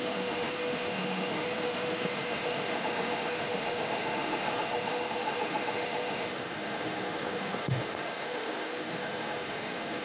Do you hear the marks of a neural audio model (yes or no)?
yes